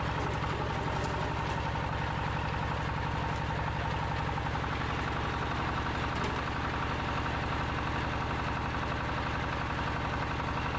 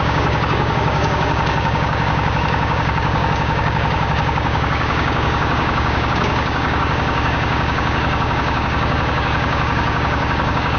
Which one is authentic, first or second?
first